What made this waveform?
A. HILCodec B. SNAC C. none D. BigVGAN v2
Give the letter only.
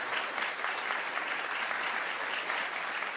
C